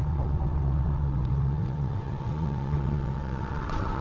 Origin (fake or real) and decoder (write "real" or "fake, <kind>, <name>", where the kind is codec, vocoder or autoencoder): fake, vocoder, WaveNeXt